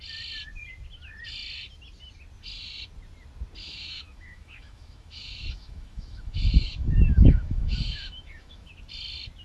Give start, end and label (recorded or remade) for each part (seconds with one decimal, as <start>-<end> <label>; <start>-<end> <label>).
0.0-3.6 recorded; 3.6-8.7 remade; 8.7-9.4 recorded